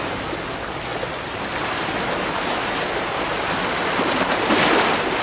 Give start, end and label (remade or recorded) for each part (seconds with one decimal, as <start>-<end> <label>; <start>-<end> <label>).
0.0-5.2 recorded